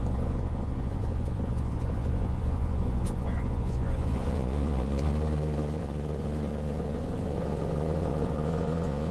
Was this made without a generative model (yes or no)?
no